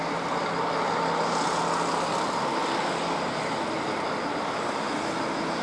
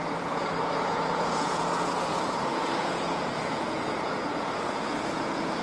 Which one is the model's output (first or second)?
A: second